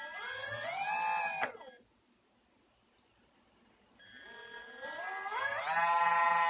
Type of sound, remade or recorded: recorded